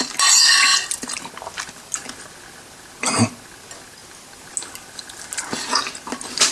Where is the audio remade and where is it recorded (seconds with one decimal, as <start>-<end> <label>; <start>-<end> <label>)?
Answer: 0.0-6.5 recorded